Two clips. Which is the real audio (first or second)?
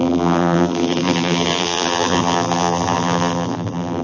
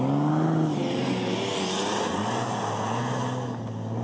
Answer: second